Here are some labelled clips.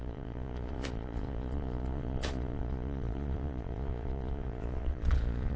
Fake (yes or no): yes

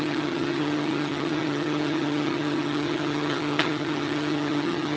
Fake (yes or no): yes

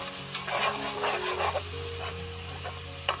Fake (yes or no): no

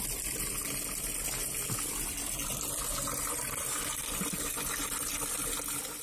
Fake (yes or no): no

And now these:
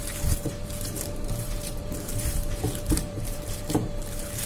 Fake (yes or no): yes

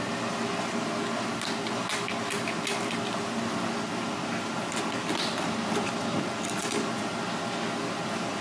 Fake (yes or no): no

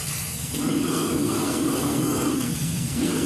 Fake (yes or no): yes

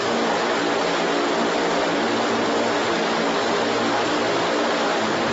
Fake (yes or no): no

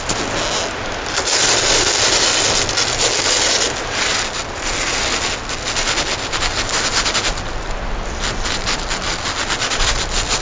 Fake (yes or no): no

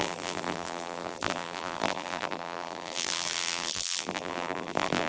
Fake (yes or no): yes